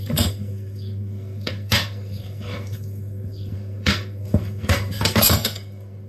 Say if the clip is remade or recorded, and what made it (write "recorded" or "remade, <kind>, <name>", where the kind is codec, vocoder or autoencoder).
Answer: remade, codec, SNAC